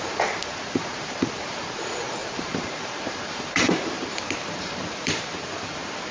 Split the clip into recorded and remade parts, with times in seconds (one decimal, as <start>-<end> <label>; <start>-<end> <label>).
0.0-6.1 remade